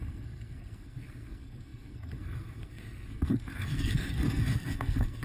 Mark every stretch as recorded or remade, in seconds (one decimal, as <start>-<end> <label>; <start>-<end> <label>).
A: 0.0-5.2 remade